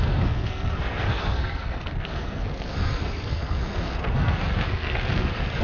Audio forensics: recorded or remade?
remade